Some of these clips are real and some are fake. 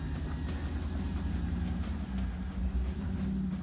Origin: real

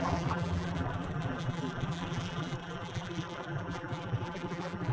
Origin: fake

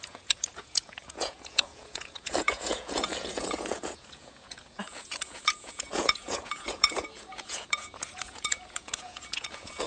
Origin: fake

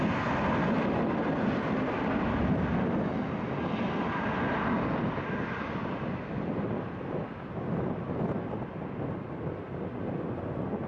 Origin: real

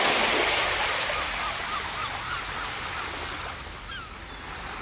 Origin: real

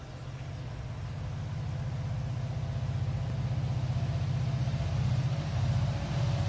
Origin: real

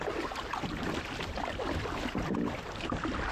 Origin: real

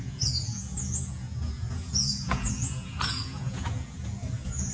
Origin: fake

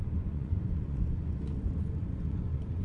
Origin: fake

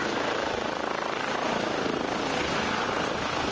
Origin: fake